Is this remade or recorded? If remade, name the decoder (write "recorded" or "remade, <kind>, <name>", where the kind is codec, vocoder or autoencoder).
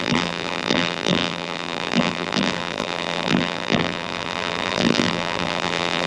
remade, vocoder, BigVGAN v2